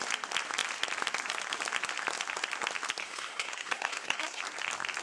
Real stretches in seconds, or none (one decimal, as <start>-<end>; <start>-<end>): 0.0-3.0; 4.4-5.0